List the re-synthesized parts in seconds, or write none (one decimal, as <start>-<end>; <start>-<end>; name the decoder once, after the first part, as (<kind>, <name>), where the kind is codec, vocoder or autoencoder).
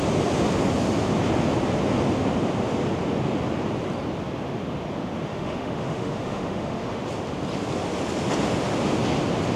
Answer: 5.3-7.0 (autoencoder, DAC-VAE)